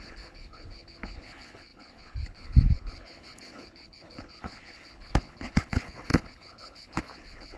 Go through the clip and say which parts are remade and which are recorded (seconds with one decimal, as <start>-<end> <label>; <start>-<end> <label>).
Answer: 0.0-7.6 remade